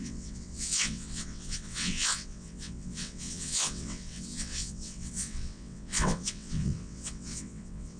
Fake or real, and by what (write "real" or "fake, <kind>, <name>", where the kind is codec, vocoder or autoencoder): fake, vocoder, WaveNeXt